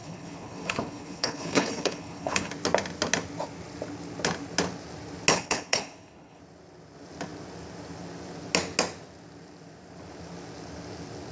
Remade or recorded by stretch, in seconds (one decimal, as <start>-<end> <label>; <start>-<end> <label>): 0.0-2.5 remade; 2.5-5.3 recorded; 5.3-6.4 remade; 6.4-11.3 recorded